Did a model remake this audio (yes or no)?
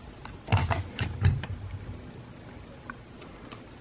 no